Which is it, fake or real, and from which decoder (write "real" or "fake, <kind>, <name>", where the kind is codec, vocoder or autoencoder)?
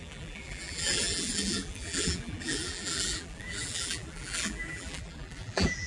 fake, vocoder, BigVGAN v2